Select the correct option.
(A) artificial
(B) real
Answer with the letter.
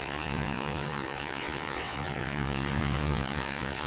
A